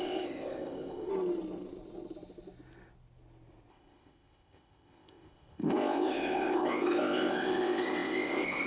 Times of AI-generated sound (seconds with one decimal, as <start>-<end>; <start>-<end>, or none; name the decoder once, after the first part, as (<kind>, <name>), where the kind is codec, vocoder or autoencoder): 0.0-1.1 (codec, ZipCodec); 3.7-8.7